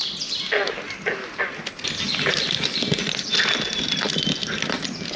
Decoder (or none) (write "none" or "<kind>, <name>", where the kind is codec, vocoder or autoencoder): none